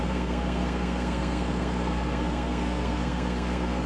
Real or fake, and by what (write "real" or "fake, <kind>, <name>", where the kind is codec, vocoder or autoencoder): fake, codec, SNAC